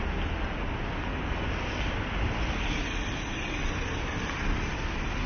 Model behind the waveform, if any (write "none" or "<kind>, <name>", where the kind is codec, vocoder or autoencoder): none